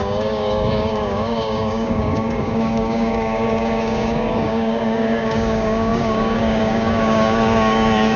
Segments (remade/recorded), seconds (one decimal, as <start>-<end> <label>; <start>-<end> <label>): 0.0-8.2 remade